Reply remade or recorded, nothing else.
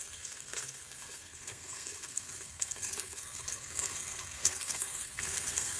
remade